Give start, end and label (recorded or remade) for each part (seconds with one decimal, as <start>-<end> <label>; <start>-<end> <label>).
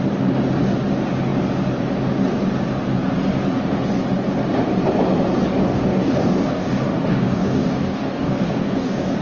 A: 0.0-5.6 recorded; 5.6-9.2 remade